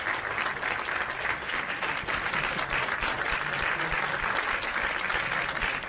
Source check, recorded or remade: recorded